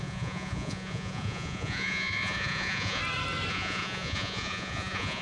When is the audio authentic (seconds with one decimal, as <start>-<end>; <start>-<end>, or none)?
3.0-3.5

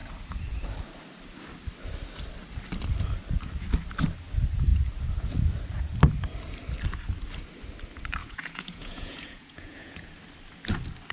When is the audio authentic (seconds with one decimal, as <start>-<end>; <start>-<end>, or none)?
0.0-8.2; 10.1-11.1

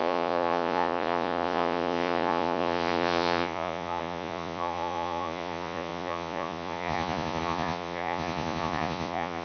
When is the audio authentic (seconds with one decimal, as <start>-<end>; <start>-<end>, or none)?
none

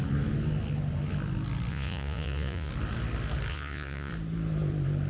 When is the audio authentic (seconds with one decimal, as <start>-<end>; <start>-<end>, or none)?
0.0-1.7; 2.7-3.5; 4.1-5.1

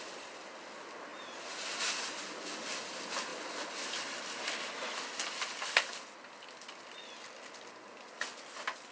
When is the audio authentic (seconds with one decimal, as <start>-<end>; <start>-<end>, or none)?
0.0-8.9